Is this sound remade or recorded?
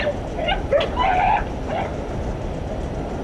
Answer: remade